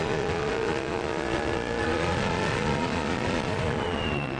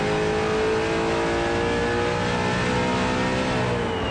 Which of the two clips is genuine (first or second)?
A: second